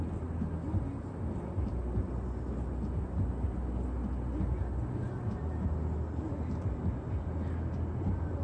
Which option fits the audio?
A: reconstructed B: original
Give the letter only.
B